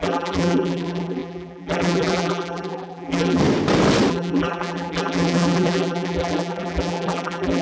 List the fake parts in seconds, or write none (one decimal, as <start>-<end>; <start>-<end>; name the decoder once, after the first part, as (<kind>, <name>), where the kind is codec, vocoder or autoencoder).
0.0-3.4 (vocoder, BigVGAN v2); 4.1-7.6